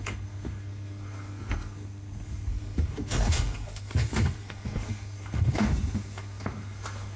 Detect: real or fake fake